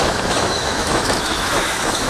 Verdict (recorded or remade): remade